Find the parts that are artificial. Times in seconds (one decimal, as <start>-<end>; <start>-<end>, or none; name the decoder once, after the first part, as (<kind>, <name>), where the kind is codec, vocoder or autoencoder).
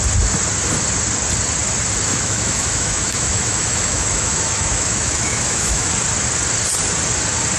2.1-5.9 (autoencoder, DAC-VAE)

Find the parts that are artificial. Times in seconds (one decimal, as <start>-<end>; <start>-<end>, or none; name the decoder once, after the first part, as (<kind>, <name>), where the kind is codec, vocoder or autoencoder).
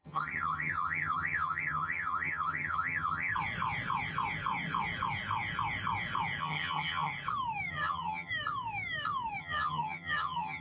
0.0-3.3 (vocoder, HiFi-GAN); 6.4-7.1; 7.7-8.3; 9.4-10.6